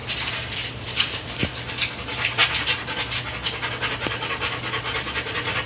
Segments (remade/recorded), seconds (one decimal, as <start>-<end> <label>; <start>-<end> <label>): 0.0-2.4 remade; 2.4-3.2 recorded; 3.2-5.7 remade